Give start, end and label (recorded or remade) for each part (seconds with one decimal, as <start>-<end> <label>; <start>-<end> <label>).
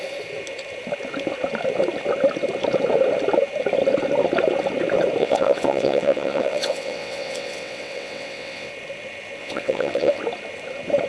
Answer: 0.0-5.2 recorded; 5.2-8.7 remade; 8.7-9.4 recorded; 9.4-10.2 remade; 10.2-11.1 recorded